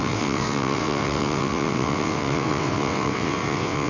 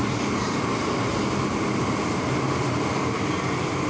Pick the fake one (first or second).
first